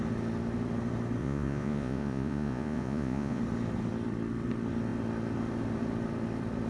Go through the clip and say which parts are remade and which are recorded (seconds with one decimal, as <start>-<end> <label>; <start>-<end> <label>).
0.0-1.2 recorded; 1.2-3.4 remade; 3.4-6.7 recorded